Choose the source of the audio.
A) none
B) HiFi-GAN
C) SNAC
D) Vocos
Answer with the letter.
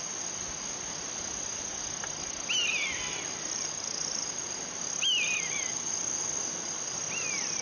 A